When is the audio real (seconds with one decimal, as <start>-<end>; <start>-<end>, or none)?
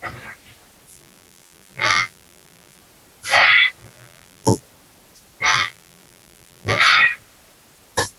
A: 0.0-0.9; 2.8-3.8; 4.6-5.5; 6.8-8.2